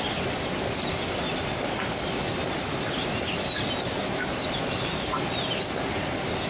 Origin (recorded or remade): recorded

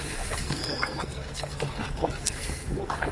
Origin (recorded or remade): remade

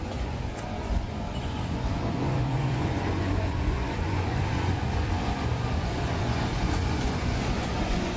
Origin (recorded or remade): remade